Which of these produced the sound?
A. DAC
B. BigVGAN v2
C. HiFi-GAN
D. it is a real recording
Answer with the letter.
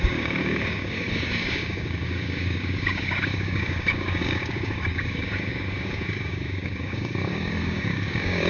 A